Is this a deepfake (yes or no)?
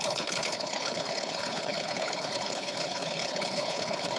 yes